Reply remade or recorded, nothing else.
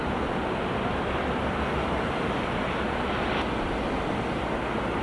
recorded